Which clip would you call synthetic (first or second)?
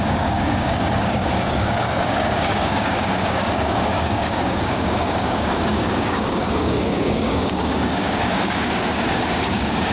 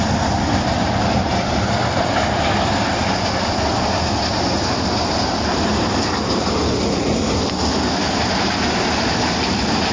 first